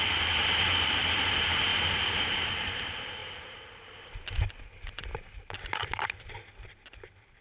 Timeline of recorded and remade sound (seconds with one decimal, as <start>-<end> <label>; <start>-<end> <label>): 0.0-0.4 recorded; 0.4-1.0 remade; 1.0-1.7 recorded; 1.7-2.6 remade; 2.6-3.2 recorded; 3.2-3.8 remade; 3.8-5.1 recorded; 5.1-5.6 remade; 5.6-7.4 recorded